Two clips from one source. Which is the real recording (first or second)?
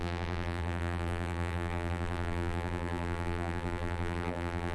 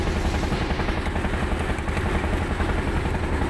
second